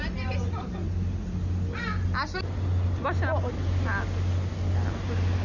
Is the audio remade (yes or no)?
no